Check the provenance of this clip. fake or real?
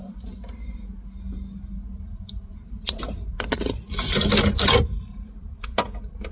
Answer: real